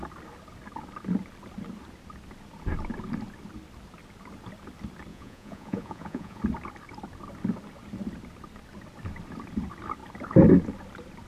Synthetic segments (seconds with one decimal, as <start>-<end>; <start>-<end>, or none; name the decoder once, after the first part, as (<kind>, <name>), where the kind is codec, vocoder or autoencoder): 5.1-6.4 (vocoder, Vocos)